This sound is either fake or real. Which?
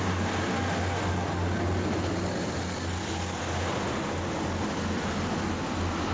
real